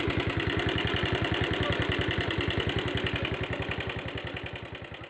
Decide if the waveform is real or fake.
real